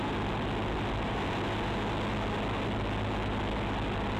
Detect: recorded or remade recorded